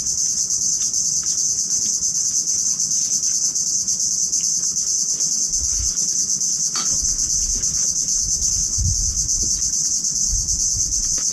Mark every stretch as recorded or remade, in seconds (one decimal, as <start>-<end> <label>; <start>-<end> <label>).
0.0-11.3 recorded